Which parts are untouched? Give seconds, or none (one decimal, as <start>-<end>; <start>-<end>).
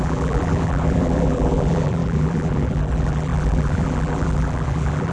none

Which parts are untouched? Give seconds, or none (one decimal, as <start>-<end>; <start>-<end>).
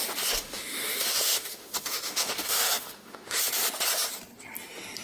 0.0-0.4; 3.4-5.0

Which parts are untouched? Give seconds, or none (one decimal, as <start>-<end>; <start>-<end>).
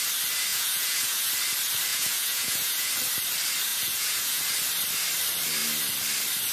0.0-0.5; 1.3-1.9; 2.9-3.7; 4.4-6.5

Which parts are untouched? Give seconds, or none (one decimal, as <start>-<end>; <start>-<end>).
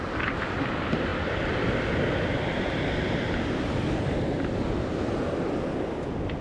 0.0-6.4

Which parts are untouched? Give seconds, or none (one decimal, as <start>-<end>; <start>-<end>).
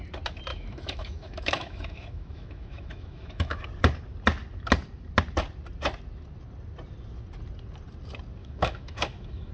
0.0-0.5; 3.6-8.4